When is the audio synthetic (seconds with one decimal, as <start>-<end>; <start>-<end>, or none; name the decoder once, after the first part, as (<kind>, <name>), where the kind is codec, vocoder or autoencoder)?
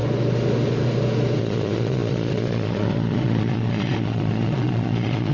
1.4-5.3 (vocoder, Vocos)